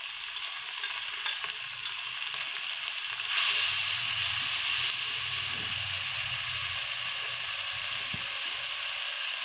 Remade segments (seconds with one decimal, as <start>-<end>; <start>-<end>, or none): none

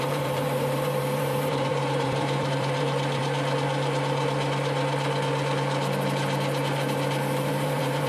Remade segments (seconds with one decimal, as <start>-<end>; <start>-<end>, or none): 0.0-3.2; 7.5-8.1

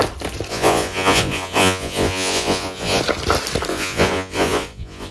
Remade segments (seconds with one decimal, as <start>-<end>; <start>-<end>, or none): 0.5-3.0; 3.7-5.1